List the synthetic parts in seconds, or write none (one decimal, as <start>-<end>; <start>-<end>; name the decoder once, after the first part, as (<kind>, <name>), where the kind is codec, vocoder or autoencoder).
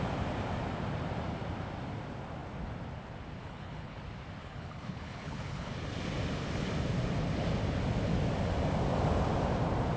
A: 3.4-4.0 (codec, HILCodec); 4.4-5.7